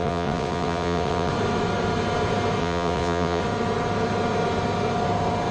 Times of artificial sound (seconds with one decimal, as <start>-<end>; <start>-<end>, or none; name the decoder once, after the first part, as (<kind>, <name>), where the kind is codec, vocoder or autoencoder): 0.0-1.3 (vocoder, WaveNeXt); 2.6-3.4